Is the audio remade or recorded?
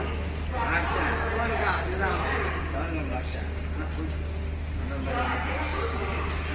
recorded